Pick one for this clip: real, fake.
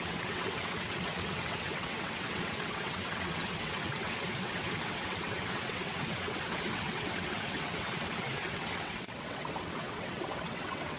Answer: fake